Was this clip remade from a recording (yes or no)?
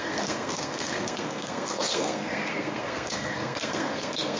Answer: yes